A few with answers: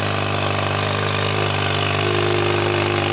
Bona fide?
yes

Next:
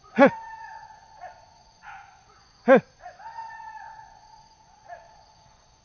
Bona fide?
no